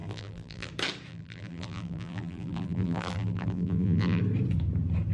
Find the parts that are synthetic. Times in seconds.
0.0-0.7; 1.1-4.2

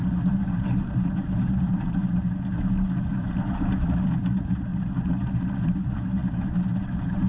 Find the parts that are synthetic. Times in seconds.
0.0-2.0; 3.0-4.7; 5.6-7.3

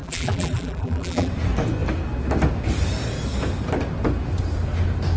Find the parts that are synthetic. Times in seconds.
0.0-1.3

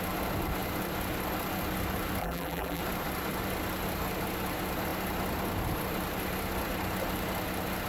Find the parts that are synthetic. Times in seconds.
2.2-2.8

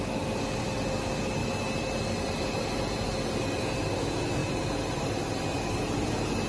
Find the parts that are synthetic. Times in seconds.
1.4-2.4